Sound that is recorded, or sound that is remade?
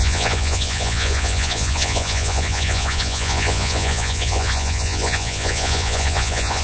remade